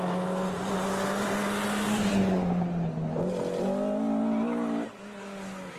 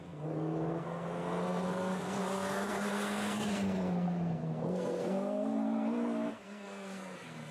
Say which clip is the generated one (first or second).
second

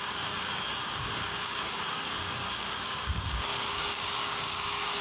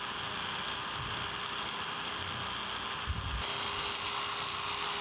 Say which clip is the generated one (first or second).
first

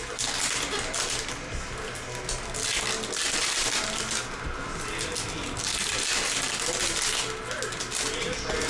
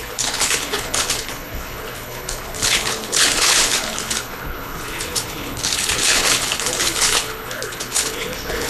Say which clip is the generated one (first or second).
second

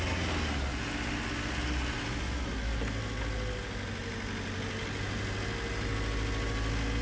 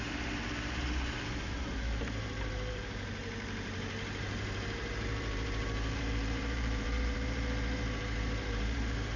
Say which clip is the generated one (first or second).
second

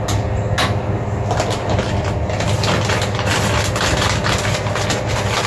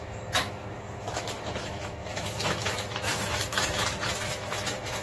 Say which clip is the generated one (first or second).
second